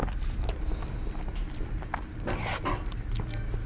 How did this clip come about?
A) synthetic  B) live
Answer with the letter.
B